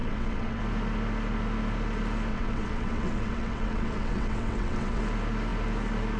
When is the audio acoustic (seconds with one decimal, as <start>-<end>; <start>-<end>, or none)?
0.6-2.3; 5.0-6.2